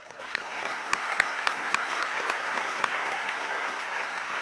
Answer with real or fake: fake